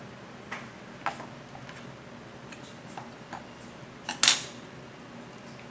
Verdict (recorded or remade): recorded